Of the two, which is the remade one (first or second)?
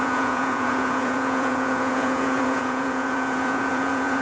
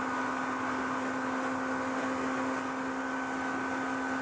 first